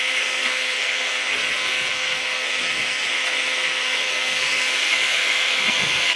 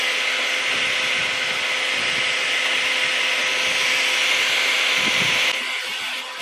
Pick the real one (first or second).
second